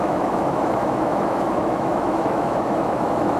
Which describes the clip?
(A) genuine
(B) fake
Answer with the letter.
B